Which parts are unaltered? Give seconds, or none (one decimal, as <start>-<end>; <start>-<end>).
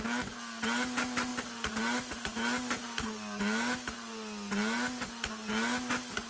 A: 0.0-6.3